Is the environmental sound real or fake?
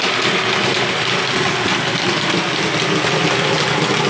real